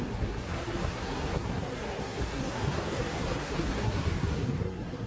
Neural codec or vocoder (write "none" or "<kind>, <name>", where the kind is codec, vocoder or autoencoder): codec, SNAC